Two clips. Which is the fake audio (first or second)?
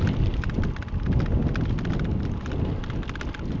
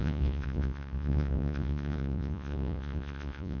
second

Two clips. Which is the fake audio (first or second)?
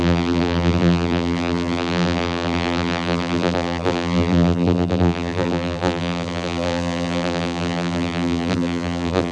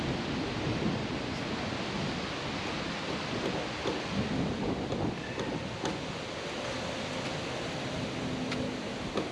first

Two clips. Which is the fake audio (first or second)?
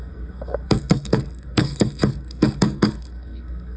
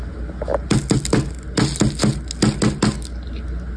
first